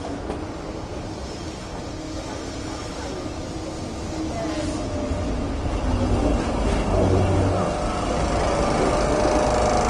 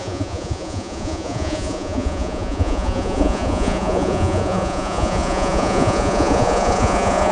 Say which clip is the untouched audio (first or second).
first